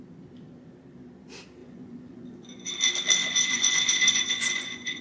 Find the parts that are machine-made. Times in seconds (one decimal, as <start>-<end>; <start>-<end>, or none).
1.6-2.7; 3.2-5.0